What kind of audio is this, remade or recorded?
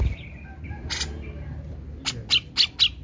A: recorded